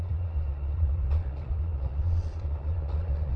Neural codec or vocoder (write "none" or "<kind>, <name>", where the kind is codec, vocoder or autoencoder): vocoder, Vocos